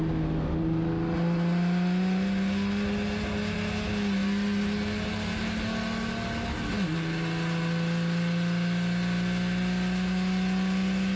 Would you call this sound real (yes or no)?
yes